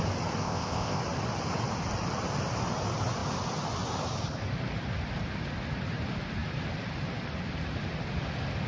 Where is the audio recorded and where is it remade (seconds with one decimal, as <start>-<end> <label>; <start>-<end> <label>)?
0.0-0.4 recorded; 0.4-1.0 remade; 1.0-8.7 recorded